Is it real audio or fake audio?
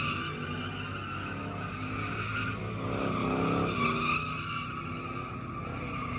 real